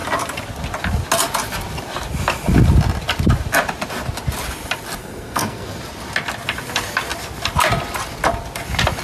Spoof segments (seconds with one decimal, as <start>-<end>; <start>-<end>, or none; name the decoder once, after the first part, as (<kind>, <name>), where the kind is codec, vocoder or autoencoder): 5.0-5.8 (codec, SNAC)